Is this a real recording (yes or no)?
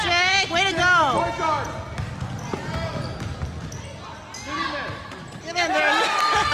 yes